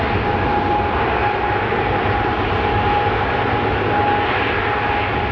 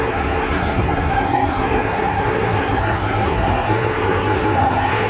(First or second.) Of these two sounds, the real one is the first